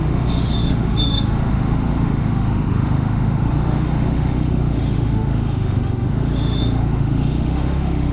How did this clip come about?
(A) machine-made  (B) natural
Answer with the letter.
A